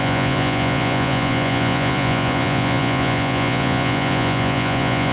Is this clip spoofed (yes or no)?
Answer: yes